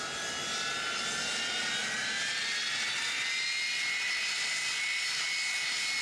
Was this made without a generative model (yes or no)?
yes